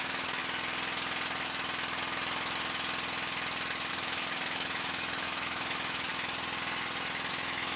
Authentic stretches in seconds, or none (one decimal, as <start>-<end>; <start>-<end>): 0.4-3.9; 6.1-7.3